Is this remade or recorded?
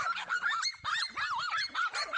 remade